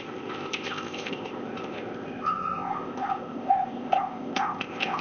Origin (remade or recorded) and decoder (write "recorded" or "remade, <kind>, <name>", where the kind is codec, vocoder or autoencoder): remade, codec, ZipCodec